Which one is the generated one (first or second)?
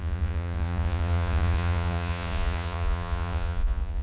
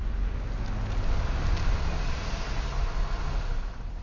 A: first